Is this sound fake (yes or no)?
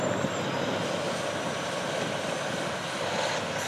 no